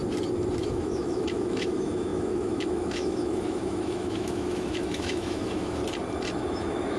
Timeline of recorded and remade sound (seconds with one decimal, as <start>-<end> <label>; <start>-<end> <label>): 0.0-0.6 recorded; 0.6-5.8 remade; 5.8-6.4 recorded; 6.4-7.0 remade